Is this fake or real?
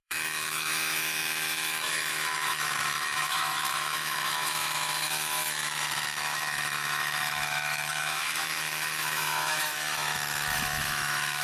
fake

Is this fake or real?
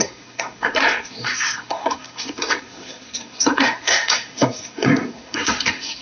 fake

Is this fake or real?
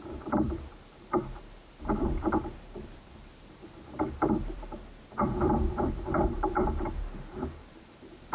fake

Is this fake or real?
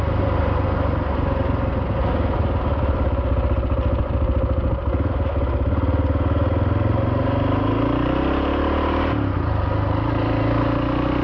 real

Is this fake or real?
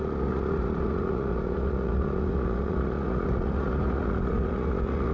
fake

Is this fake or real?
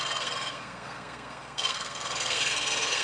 fake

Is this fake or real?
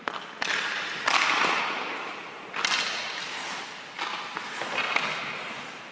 real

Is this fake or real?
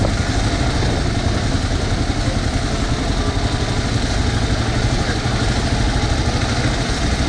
real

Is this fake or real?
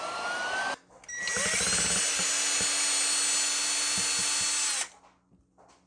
real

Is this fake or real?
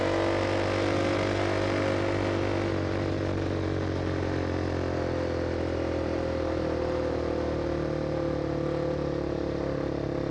real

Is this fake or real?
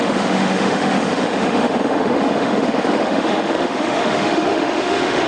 fake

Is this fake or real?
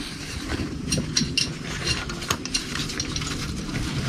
fake